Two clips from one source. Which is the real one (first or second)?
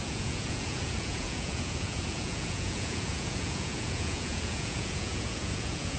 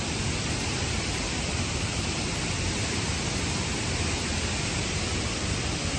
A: second